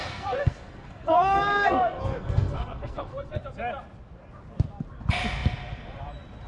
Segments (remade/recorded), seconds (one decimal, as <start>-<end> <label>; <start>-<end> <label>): 0.0-3.4 remade; 3.4-6.5 recorded